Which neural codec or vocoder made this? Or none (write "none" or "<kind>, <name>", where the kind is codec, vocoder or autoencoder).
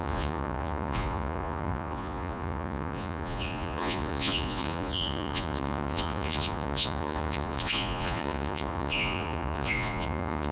vocoder, Vocos